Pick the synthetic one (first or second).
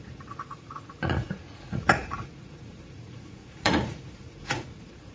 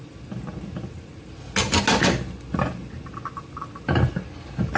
first